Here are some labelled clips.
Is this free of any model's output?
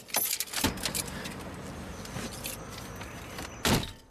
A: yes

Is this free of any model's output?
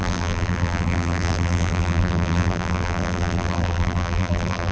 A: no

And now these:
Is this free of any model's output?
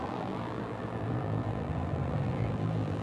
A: no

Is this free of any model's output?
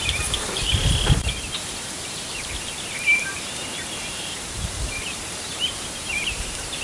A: no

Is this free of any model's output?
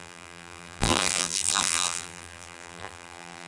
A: no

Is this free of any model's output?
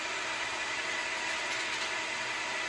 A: yes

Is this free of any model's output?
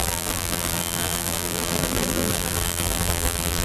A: no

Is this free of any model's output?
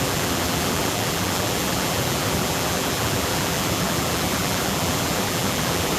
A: no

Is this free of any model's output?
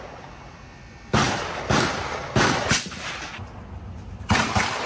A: yes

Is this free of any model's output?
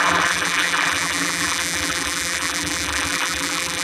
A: no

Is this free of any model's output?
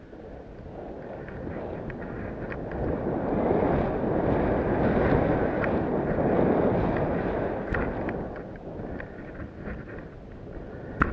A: yes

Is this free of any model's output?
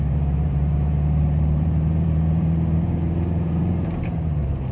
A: no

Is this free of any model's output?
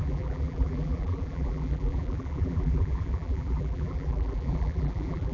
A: no